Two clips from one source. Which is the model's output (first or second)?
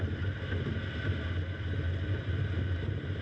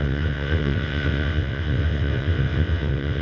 second